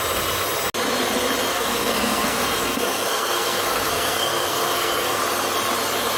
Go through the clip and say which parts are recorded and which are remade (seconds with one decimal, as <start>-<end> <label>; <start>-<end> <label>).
0.0-1.5 recorded; 1.5-5.2 remade; 5.2-6.2 recorded